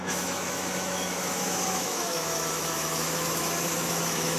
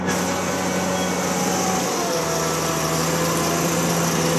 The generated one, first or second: first